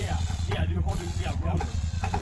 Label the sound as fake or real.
fake